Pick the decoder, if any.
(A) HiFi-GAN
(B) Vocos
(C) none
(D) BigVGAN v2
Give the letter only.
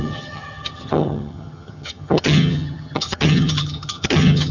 A